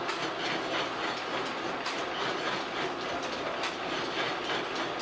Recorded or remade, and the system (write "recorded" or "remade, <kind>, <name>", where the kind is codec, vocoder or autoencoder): recorded